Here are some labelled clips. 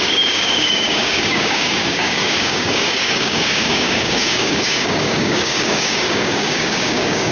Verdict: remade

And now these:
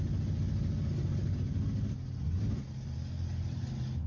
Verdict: recorded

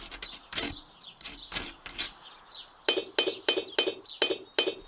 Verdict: recorded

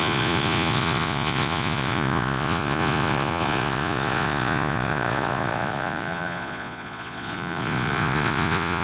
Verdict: remade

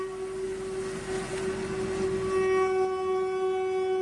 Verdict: recorded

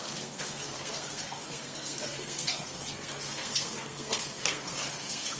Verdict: remade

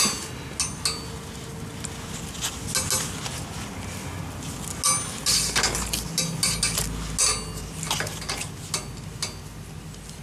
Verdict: recorded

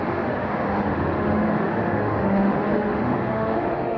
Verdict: remade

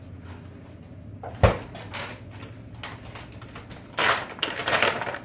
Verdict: recorded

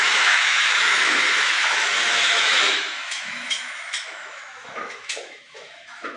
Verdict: remade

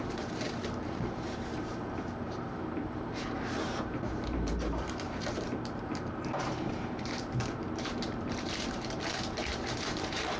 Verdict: remade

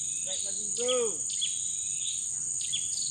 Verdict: recorded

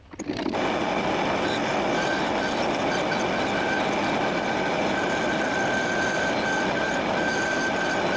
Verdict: recorded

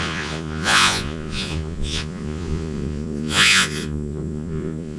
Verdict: remade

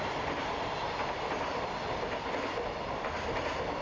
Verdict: recorded